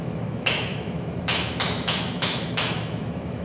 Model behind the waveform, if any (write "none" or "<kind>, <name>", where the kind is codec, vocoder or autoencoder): autoencoder, DAC-VAE